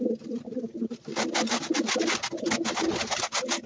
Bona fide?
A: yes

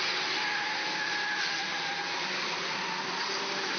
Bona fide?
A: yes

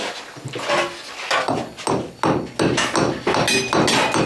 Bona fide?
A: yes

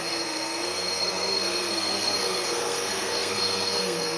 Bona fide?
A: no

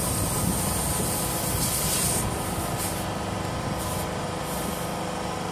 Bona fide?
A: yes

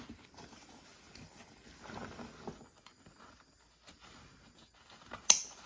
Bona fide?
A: yes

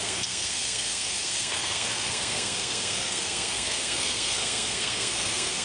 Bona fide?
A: no